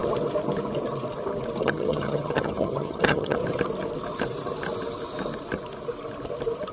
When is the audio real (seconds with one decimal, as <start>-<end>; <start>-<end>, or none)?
0.0-1.6; 3.4-6.7